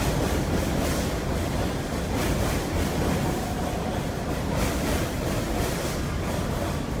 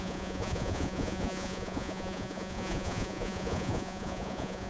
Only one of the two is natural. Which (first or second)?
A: first